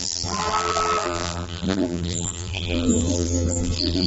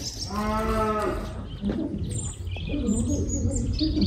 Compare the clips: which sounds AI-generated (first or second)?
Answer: first